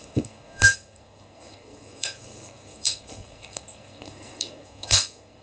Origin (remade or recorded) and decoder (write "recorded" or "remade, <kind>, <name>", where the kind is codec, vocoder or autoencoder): remade, codec, SNAC